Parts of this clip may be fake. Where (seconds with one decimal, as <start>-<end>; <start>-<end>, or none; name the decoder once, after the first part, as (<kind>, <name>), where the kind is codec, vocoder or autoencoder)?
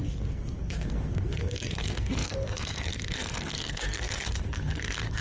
0.0-5.2 (codec, SNAC)